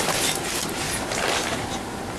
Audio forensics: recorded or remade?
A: recorded